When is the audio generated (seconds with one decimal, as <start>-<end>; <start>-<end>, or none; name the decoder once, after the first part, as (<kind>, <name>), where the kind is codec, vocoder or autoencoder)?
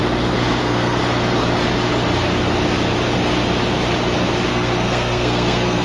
0.6-1.0 (codec, SNAC); 4.5-5.8